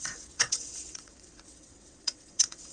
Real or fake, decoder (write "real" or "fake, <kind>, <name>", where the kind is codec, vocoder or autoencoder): fake, vocoder, WaveNeXt